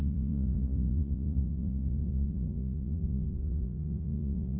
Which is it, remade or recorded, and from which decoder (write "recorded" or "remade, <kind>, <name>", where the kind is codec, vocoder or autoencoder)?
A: remade, vocoder, Vocos